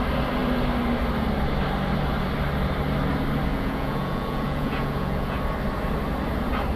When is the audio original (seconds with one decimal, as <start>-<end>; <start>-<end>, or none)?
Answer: 0.0-3.5; 5.4-6.8